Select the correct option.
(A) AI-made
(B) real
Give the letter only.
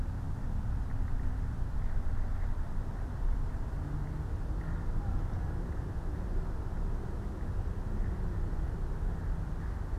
B